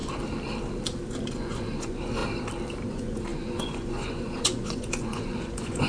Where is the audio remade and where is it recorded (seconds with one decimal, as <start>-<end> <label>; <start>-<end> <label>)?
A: 0.0-1.3 recorded; 1.3-2.2 remade; 2.2-2.9 recorded; 2.9-5.9 remade